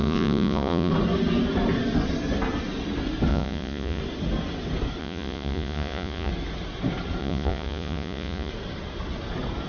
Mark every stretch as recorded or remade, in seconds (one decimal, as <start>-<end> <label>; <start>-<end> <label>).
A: 0.0-0.9 remade; 0.9-3.3 recorded; 3.3-4.0 remade; 4.0-5.0 recorded; 5.0-6.3 remade; 6.3-7.2 recorded; 7.2-8.5 remade; 8.5-9.7 recorded